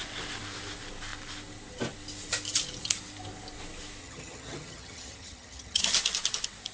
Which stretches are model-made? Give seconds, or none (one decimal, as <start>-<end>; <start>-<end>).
4.0-5.8